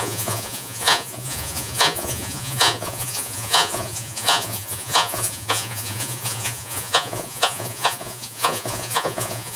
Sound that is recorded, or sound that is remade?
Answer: remade